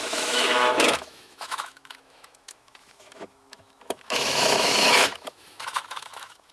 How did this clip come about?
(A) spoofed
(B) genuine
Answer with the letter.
A